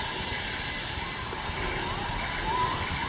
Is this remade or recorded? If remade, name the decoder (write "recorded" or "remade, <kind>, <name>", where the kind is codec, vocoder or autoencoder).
recorded